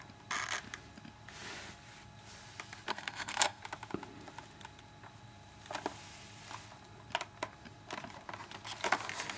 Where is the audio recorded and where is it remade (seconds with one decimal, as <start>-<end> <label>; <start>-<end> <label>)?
0.0-2.9 recorded; 2.9-3.6 remade; 3.6-9.4 recorded

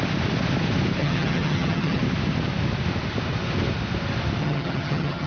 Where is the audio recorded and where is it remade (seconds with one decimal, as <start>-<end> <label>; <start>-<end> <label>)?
0.0-1.0 recorded; 1.0-2.0 remade; 2.0-4.4 recorded; 4.4-5.3 remade

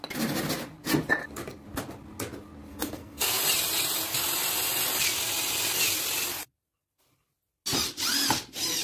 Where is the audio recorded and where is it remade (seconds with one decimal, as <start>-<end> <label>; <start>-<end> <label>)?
0.0-2.7 recorded; 2.7-3.4 remade; 3.4-8.8 recorded

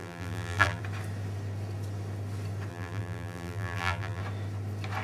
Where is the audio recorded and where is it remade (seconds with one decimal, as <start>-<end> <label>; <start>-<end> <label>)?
0.0-0.8 remade; 0.8-2.7 recorded; 2.7-4.2 remade; 4.2-5.0 recorded

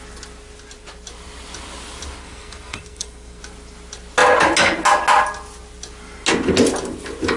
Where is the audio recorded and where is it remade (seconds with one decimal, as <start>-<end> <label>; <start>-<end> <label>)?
0.0-2.2 recorded; 2.2-3.4 remade; 3.4-7.4 recorded

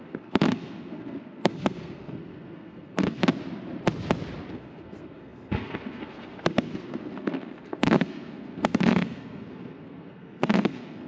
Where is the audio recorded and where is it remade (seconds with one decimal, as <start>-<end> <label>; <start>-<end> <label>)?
0.0-3.2 remade; 3.2-4.5 recorded; 4.5-11.1 remade

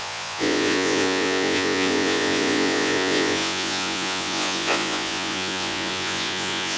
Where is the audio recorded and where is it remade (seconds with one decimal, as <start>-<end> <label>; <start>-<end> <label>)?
0.0-6.8 remade

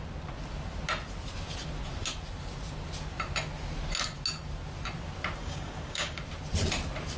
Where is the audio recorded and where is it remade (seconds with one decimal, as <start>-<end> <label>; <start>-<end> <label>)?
0.0-5.4 recorded; 5.4-6.2 remade; 6.2-7.2 recorded